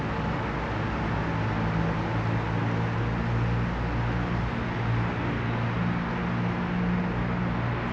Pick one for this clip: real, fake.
real